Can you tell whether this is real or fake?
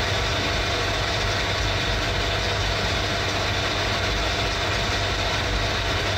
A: real